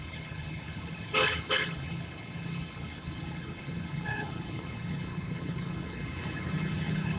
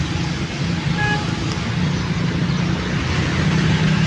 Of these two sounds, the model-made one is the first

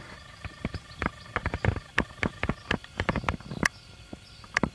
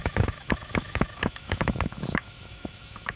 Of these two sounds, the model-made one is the second